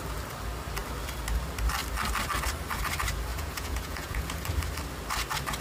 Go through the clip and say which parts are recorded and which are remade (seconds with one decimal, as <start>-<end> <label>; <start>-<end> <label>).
0.0-3.3 recorded; 3.3-4.4 remade; 4.4-5.6 recorded